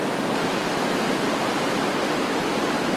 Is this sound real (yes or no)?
yes